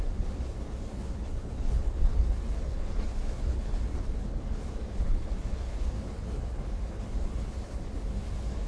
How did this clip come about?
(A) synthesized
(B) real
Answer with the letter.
A